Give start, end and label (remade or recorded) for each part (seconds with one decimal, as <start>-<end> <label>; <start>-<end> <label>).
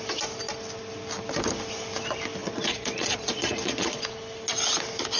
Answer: 0.0-2.4 recorded; 2.4-4.0 remade; 4.0-5.2 recorded